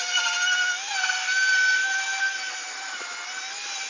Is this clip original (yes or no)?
yes